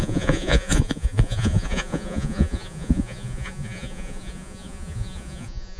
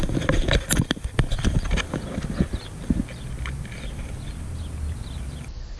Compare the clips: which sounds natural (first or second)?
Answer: second